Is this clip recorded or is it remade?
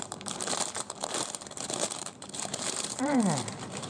remade